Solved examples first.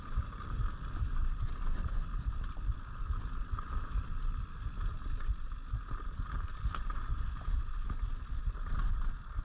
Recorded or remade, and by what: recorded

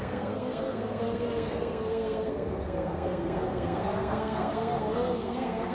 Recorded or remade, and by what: remade, codec, SNAC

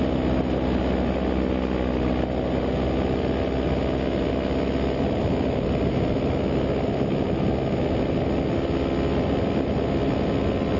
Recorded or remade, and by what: recorded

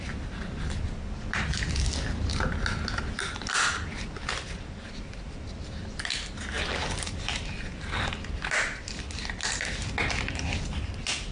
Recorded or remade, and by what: recorded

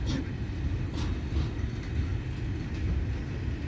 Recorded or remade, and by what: recorded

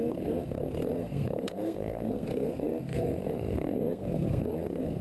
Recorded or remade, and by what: remade, codec, SNAC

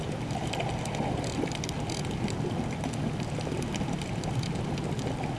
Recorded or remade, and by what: recorded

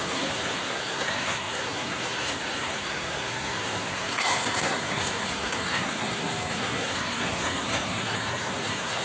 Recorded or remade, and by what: remade, codec, SNAC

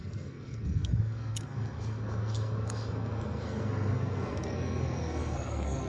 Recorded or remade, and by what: remade, codec, SNAC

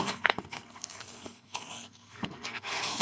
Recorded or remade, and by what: remade, codec, SNAC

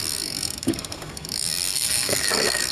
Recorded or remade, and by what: remade, codec, SNAC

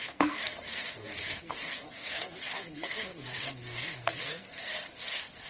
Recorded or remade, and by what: remade, codec, SNAC